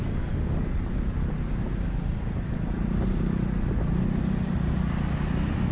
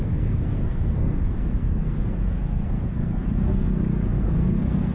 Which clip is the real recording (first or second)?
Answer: first